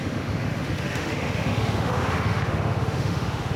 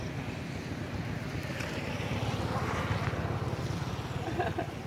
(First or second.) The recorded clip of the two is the second